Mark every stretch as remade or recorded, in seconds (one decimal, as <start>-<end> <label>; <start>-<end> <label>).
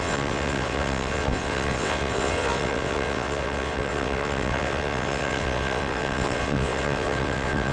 0.0-7.7 remade